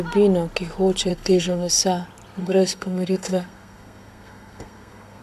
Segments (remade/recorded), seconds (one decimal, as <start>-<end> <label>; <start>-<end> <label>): 0.0-1.1 recorded; 1.1-1.7 remade; 1.7-2.4 recorded; 2.4-5.2 remade